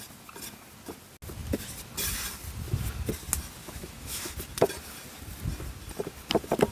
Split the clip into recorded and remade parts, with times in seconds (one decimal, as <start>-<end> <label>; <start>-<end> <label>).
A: 0.0-3.6 recorded; 3.6-4.3 remade; 4.3-6.7 recorded